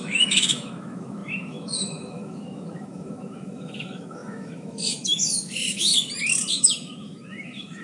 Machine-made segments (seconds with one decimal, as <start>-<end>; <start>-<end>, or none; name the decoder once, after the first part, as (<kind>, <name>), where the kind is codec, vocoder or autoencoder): 0.0-5.9 (autoencoder, DAC-VAE); 6.5-7.8

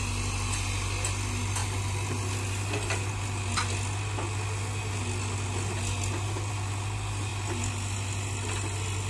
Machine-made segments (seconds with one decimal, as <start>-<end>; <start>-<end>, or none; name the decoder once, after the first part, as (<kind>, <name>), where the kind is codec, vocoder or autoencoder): none